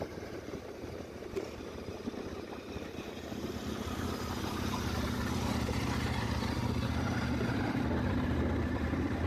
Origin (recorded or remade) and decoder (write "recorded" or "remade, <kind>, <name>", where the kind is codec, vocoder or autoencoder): remade, vocoder, BigVGAN v2